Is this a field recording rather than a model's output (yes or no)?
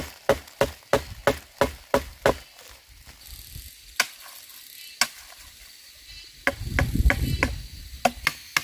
yes